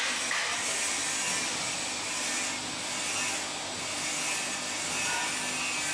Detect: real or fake real